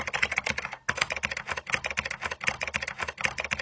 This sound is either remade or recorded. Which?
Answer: recorded